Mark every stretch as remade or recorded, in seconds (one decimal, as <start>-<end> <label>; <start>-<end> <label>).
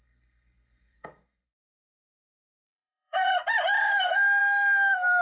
0.0-3.3 remade; 3.3-3.8 recorded; 3.8-5.2 remade